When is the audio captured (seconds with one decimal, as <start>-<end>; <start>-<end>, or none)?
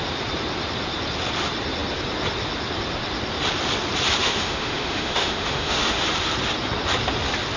0.0-4.2; 6.0-7.6